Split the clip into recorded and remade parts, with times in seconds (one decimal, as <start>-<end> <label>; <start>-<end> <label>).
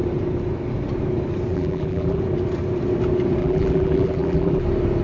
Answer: 0.0-1.5 recorded; 1.5-2.2 remade; 2.2-3.4 recorded; 3.4-4.6 remade; 4.6-5.0 recorded